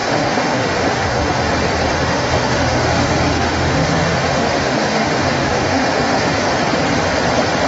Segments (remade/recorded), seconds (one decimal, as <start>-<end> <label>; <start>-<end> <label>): 0.0-1.5 remade; 1.5-1.9 recorded; 1.9-6.5 remade; 6.5-7.7 recorded